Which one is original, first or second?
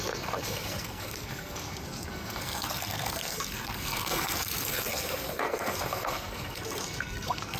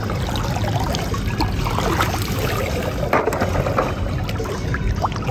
second